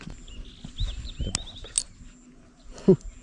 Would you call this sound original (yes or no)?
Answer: yes